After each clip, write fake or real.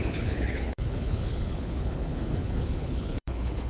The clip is fake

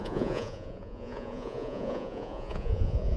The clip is fake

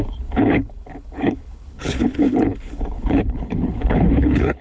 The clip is fake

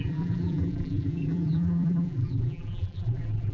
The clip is fake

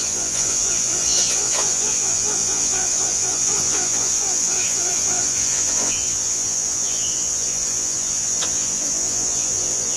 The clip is fake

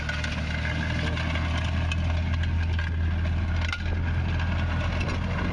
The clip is real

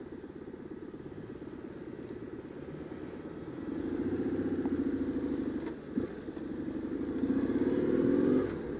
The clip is real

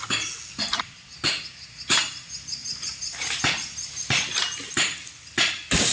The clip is real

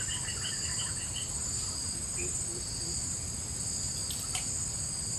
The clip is real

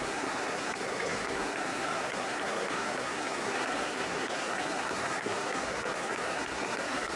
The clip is fake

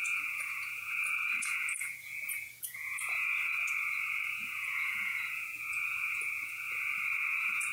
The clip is fake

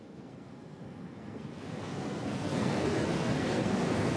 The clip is fake